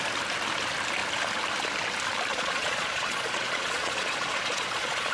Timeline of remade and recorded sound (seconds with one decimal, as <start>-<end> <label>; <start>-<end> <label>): 0.0-2.3 recorded; 2.3-5.1 remade